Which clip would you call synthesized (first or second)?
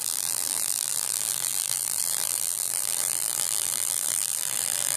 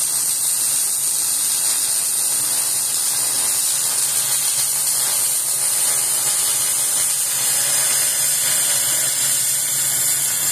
first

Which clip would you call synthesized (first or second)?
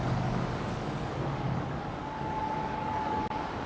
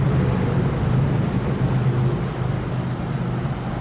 first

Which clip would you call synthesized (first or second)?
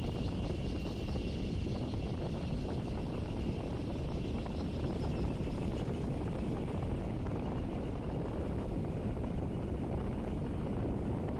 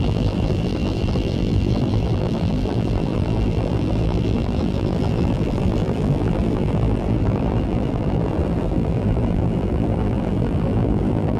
second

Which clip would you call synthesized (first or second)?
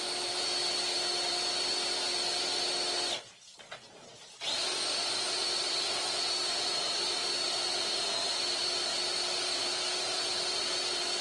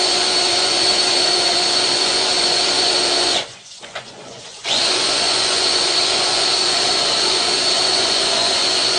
second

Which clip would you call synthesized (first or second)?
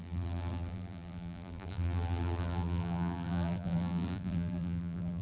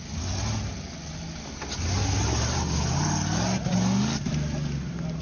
first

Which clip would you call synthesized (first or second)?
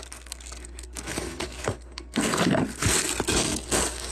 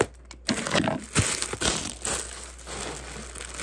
first